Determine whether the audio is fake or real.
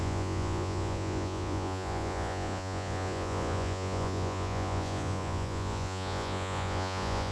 fake